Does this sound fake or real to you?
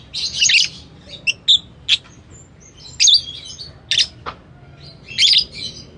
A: real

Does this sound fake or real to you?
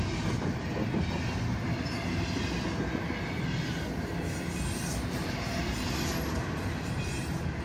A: real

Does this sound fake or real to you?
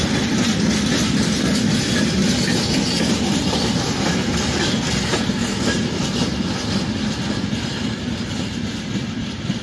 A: fake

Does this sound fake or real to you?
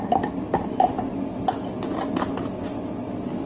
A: real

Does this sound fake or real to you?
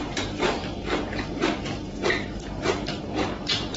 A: fake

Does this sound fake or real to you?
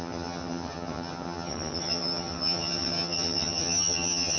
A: fake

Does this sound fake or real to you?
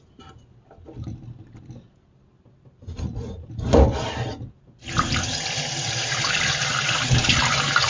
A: real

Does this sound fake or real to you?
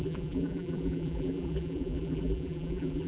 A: fake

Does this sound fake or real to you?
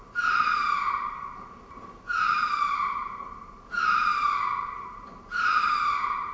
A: fake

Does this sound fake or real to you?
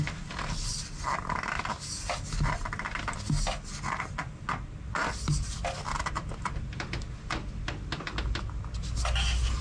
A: real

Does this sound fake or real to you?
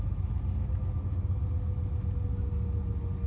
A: real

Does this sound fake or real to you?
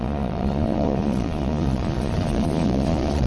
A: fake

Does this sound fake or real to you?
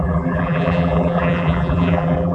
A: fake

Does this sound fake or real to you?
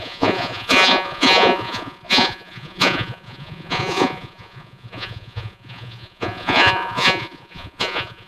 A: fake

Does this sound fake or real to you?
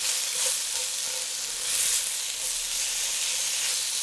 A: real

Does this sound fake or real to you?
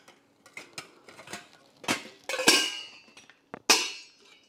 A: real